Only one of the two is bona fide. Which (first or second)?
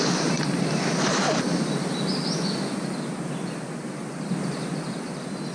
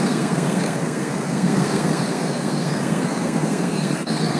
first